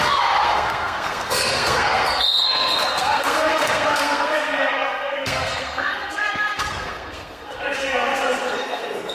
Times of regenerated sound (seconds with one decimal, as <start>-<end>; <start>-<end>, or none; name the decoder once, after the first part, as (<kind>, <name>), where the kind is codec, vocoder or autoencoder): 0.0-9.1 (codec, SNAC)